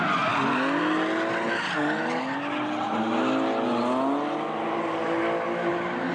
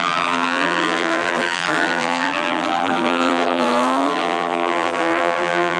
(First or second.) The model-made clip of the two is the second